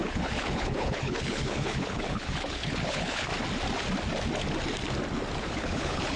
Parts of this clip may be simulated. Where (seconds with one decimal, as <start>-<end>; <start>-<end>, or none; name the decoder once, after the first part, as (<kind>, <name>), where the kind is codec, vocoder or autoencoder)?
0.0-3.3 (codec, HILCodec); 5.4-6.2